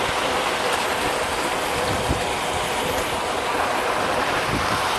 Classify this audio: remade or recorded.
recorded